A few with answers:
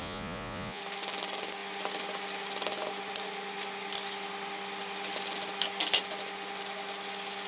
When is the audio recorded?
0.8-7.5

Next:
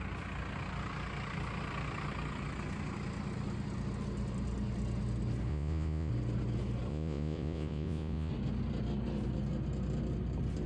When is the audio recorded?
0.0-5.5; 6.1-6.9; 8.3-10.7

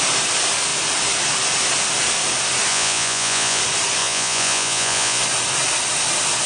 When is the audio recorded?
0.0-2.7; 3.6-4.0; 5.2-6.5

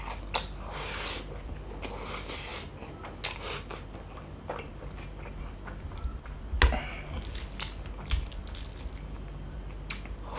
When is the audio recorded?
0.0-10.4

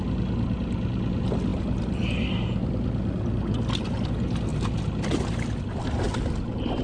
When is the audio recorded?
0.0-6.8